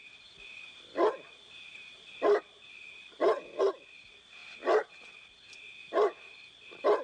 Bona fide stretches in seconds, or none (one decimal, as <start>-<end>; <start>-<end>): 3.6-5.8; 6.5-7.0